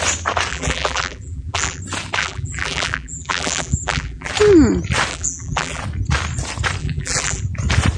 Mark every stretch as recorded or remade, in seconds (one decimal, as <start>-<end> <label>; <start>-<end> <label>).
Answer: 0.0-0.5 recorded; 0.5-1.8 remade; 1.8-2.2 recorded; 2.2-4.3 remade; 4.3-5.1 recorded; 5.1-5.8 remade; 5.8-6.8 recorded; 6.8-7.4 remade; 7.4-8.0 recorded